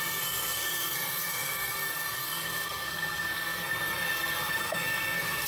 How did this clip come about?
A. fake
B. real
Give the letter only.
A